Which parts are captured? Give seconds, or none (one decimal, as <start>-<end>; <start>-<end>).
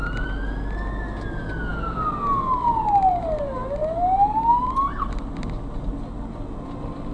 0.0-7.1